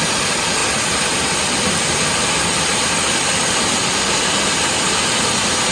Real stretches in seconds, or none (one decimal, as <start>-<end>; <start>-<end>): 0.0-5.7